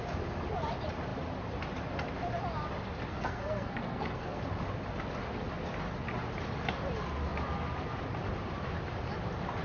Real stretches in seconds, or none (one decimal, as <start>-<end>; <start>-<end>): 0.0-3.1; 4.4-9.6